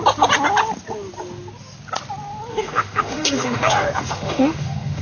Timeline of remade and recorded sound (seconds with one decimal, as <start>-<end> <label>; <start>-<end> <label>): 0.0-2.5 recorded; 2.5-5.0 remade